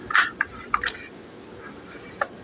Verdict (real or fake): real